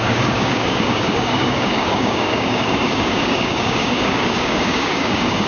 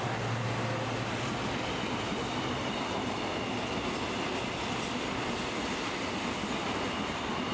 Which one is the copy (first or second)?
first